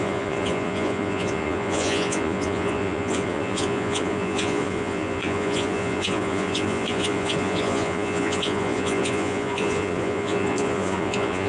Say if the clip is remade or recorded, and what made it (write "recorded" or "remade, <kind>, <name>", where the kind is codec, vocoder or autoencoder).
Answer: remade, vocoder, Vocos